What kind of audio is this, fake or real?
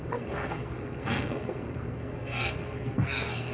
fake